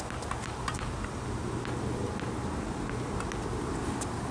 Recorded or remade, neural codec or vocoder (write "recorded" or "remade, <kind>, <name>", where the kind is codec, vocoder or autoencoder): recorded